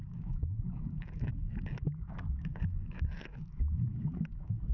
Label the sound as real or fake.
fake